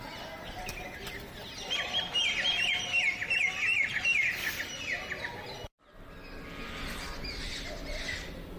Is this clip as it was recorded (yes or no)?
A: yes